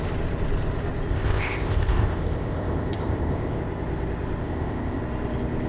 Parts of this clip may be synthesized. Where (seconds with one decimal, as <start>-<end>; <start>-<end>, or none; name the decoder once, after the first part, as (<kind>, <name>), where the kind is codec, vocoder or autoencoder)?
1.1-3.6 (codec, ZipCodec); 4.4-5.0